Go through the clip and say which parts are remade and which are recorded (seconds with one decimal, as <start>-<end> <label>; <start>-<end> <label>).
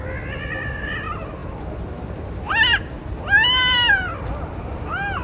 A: 0.0-5.2 recorded